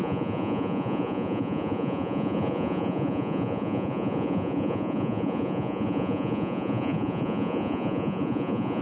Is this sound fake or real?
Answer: fake